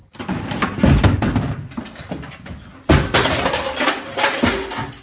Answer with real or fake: real